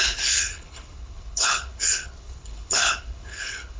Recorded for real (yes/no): no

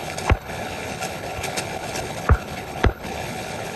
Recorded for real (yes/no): no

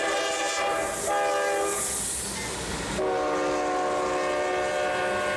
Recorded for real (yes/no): yes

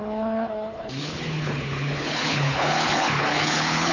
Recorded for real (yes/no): no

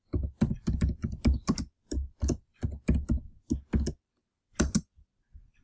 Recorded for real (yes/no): yes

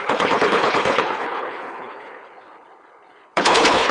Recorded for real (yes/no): no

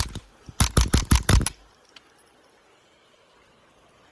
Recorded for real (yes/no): yes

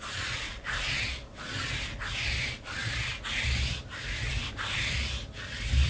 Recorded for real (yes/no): yes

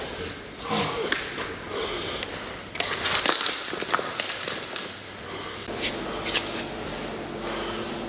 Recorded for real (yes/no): yes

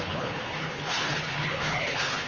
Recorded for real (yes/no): no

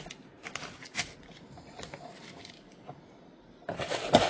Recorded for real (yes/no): yes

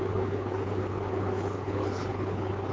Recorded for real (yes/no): no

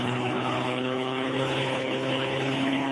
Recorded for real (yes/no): no